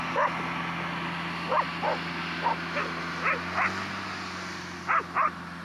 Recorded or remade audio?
recorded